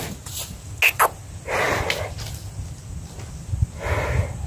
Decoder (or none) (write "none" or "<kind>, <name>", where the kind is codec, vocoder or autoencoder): none